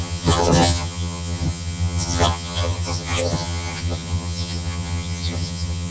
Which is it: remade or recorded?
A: remade